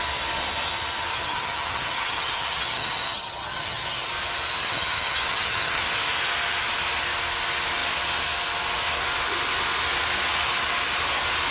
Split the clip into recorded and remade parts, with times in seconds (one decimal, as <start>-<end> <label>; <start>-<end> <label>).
0.0-1.1 recorded; 1.1-4.1 remade; 4.1-4.6 recorded; 4.6-5.8 remade; 5.8-11.5 recorded